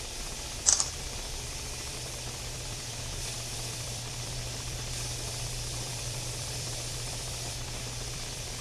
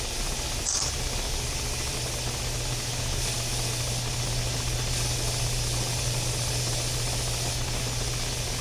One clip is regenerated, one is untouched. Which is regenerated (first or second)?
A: first